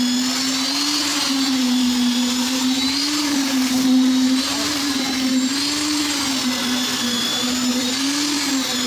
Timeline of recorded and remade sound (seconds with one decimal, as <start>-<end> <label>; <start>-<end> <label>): 0.0-1.1 recorded; 1.1-5.5 remade; 5.5-7.3 recorded; 7.3-7.9 remade; 7.9-8.9 recorded